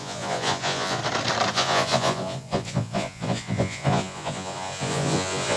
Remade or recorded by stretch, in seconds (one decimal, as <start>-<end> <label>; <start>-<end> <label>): 0.0-1.0 remade; 1.0-1.5 recorded; 1.5-5.6 remade